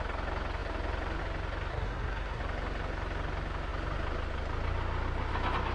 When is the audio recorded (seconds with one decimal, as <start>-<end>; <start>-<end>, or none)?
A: 0.0-1.7; 2.4-5.7